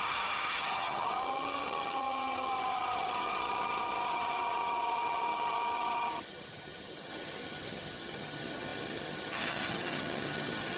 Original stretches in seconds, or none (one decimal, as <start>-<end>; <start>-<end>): none